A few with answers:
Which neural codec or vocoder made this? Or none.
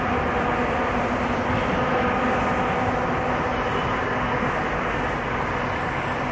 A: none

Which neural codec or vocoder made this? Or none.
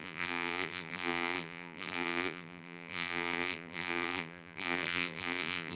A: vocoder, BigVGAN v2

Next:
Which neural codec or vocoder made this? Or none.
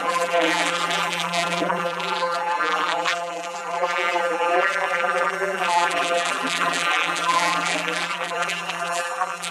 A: vocoder, BigVGAN v2